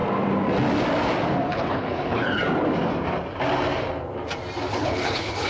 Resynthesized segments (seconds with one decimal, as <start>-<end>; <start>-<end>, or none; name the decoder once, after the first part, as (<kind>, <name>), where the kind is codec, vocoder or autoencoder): 1.5-2.4 (codec, HILCodec); 4.7-5.5